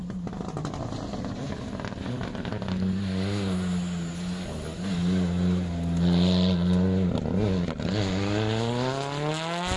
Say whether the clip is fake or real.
real